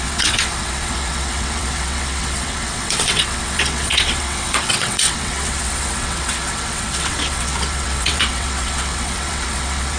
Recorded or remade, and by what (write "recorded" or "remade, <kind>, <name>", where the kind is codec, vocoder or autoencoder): remade, vocoder, WaveNeXt